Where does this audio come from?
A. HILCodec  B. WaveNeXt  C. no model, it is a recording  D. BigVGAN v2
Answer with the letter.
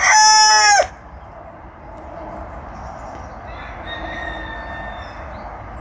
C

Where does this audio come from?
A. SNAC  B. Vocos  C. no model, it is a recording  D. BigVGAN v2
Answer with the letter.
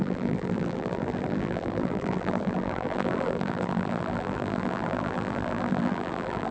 D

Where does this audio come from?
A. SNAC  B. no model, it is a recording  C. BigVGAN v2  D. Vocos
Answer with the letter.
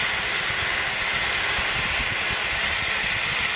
B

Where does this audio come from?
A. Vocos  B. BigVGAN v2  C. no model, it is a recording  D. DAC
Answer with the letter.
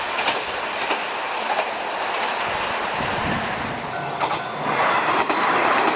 C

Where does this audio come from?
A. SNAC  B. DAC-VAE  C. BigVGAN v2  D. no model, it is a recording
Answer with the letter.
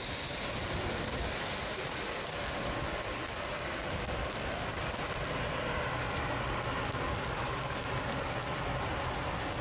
D